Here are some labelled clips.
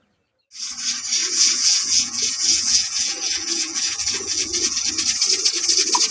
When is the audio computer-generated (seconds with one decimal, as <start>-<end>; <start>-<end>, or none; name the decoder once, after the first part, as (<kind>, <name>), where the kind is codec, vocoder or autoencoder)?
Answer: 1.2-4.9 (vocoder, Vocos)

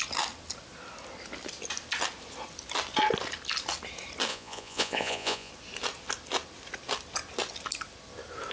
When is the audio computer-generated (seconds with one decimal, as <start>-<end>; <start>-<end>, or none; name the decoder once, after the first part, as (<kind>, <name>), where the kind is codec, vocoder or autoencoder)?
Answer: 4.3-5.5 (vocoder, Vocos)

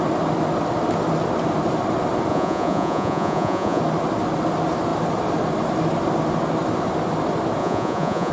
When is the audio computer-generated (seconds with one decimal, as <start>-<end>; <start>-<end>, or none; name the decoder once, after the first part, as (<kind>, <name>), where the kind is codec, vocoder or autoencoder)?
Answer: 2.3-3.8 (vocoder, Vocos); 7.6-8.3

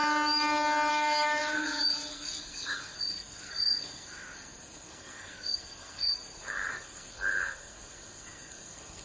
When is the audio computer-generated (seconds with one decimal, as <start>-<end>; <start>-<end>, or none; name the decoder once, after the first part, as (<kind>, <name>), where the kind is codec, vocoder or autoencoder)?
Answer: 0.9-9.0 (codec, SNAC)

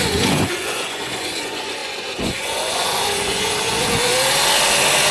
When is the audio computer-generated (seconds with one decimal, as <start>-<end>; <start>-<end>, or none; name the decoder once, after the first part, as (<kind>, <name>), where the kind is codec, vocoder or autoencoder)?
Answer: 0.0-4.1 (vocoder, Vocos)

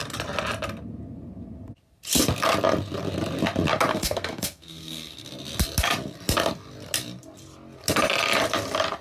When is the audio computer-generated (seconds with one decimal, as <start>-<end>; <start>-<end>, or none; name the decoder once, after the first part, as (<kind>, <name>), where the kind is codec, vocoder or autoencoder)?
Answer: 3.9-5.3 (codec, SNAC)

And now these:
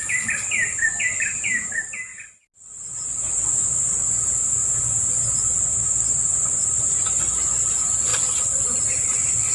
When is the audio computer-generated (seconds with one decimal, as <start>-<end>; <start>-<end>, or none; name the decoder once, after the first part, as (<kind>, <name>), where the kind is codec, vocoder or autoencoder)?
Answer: none